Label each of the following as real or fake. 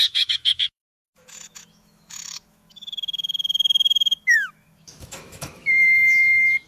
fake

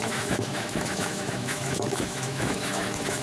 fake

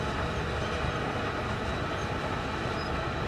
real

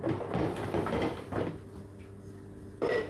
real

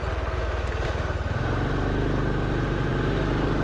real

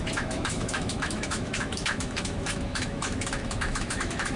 fake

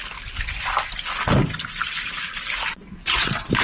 real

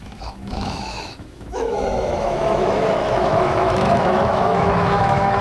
fake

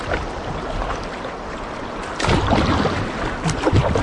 real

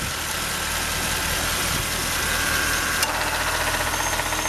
real